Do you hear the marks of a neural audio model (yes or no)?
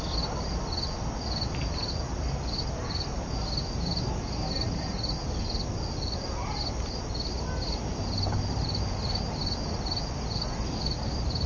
no